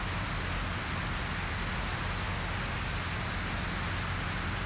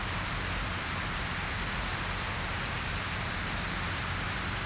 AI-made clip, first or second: second